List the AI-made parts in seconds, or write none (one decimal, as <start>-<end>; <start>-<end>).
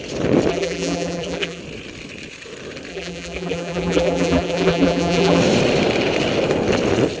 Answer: 0.5-1.6; 2.9-5.4